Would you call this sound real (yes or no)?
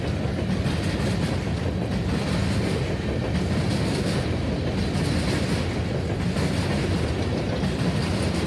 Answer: yes